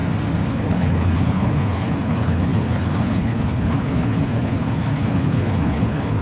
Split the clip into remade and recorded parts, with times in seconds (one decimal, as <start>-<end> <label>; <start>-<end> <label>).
0.0-0.5 recorded; 0.5-6.2 remade